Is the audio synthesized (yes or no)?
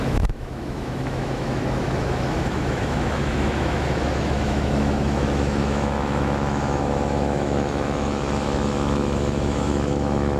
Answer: yes